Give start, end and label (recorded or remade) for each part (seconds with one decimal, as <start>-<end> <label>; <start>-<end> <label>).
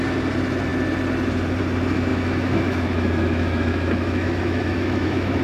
0.0-2.1 recorded; 2.1-5.4 remade